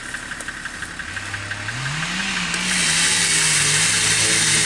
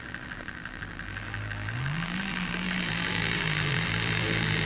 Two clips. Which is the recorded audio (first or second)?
first